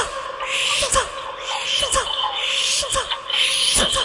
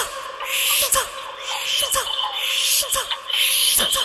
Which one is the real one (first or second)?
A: first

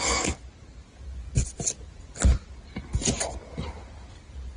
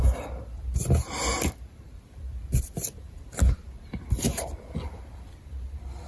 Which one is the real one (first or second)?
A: first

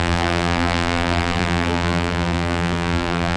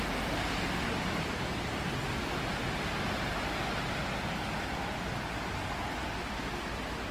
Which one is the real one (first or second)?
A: second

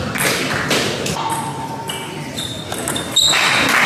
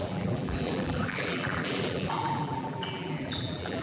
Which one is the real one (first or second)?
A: first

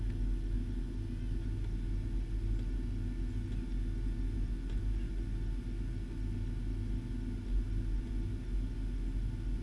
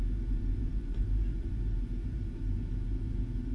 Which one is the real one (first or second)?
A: first